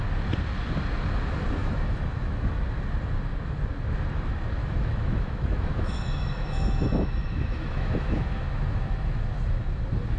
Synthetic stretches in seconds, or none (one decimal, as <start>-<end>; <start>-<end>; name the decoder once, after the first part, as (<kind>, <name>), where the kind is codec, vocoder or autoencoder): 1.6-2.5 (autoencoder, DAC-VAE); 4.6-9.2